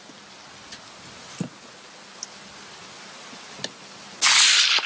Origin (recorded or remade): recorded